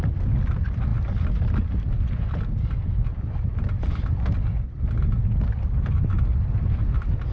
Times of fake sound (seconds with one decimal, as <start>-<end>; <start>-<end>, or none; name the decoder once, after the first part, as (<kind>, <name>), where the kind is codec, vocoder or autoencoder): none